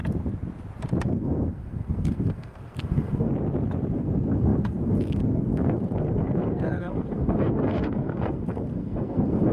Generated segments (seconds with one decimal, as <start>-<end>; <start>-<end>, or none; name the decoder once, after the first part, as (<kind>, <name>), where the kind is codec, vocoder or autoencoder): 1.0-3.3 (codec, SNAC); 3.9-9.5